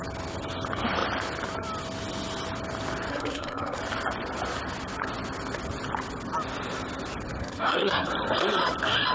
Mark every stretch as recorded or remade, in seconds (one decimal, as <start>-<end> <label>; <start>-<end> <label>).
0.0-3.1 recorded; 3.1-3.8 remade; 3.8-7.4 recorded; 7.4-8.1 remade; 8.1-9.1 recorded